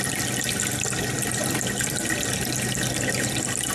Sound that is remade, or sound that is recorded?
recorded